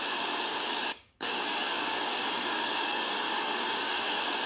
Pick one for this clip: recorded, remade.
remade